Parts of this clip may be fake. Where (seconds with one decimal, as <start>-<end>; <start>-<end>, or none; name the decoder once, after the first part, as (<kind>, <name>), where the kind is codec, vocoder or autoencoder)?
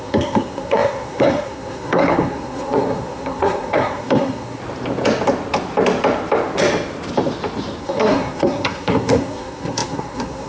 0.0-4.6 (codec, SNAC); 7.8-10.5